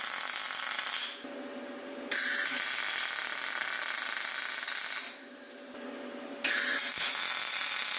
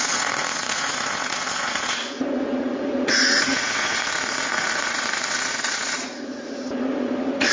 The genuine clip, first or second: first